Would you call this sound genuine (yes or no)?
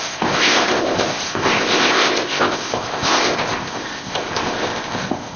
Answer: no